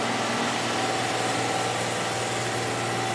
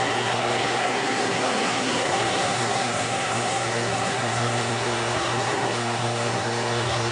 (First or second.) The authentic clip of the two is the first